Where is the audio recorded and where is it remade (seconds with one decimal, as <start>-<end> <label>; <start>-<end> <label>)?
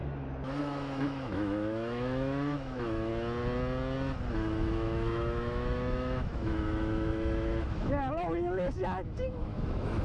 0.0-0.6 recorded; 0.6-3.1 remade; 3.1-4.3 recorded; 4.3-10.0 remade